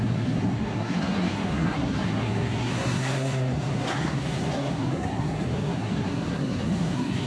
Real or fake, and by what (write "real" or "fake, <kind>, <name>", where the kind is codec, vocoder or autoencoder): fake, codec, SNAC